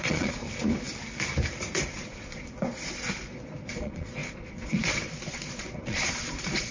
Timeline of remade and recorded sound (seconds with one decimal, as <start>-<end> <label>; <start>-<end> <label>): 0.0-0.4 remade; 0.4-1.9 recorded; 1.9-6.7 remade